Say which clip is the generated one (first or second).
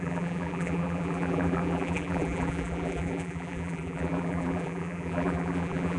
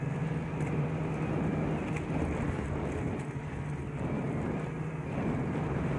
first